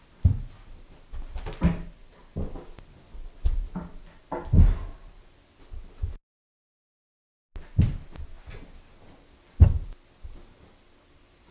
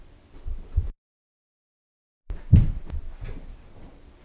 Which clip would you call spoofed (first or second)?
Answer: second